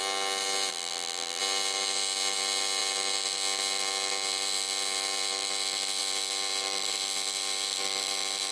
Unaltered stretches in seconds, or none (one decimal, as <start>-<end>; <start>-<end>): 0.0-0.7; 1.4-8.5